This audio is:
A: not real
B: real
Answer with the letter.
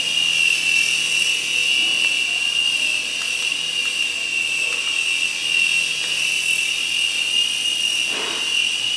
B